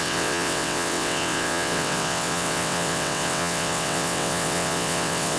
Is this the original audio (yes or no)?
no